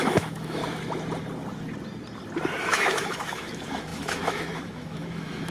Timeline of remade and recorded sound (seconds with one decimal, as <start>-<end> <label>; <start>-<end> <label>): 0.0-0.6 remade; 0.6-2.6 recorded; 2.6-5.5 remade